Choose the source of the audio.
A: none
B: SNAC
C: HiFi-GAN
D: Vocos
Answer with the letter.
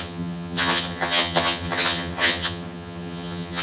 C